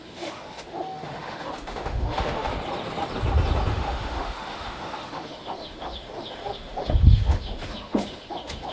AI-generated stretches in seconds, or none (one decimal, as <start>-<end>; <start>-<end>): 0.0-2.5; 3.7-8.7